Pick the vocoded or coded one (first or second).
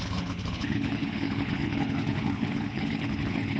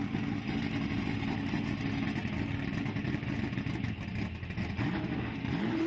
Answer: first